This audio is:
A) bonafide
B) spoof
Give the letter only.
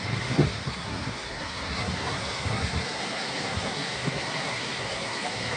B